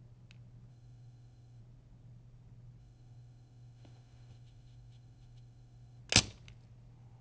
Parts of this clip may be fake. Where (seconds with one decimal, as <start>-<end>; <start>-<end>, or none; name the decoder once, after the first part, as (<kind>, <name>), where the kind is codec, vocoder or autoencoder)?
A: 0.7-1.6 (autoencoder, DAC-VAE); 2.8-6.0